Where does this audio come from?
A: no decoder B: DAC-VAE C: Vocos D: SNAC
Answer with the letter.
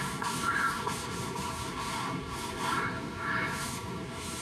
D